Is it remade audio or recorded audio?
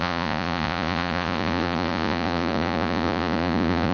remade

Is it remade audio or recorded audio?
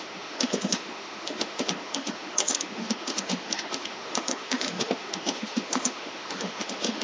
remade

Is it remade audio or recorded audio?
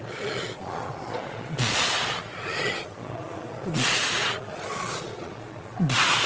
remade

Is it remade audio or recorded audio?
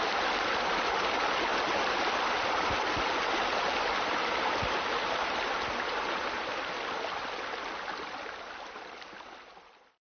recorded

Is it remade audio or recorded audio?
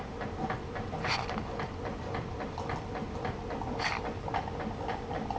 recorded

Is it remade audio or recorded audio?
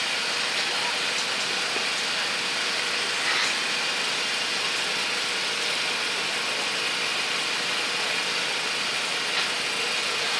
recorded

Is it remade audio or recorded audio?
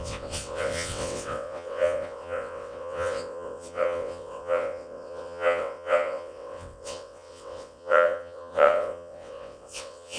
remade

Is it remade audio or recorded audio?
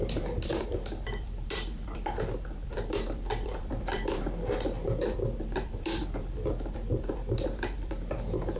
remade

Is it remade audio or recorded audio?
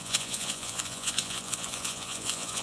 remade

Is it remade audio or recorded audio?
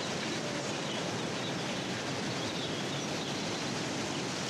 recorded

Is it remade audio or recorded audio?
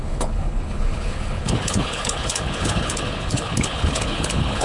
remade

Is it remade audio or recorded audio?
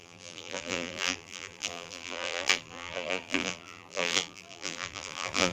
remade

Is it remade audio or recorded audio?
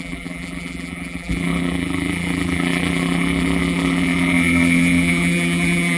remade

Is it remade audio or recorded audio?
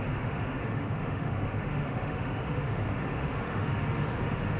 remade